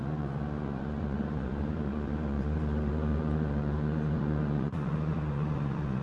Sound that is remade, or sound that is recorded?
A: remade